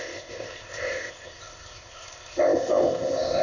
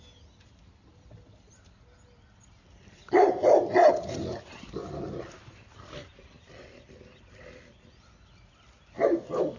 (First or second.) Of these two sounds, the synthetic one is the first